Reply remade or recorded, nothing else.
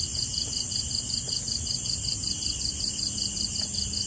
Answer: recorded